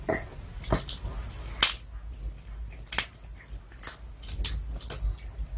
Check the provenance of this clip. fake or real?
real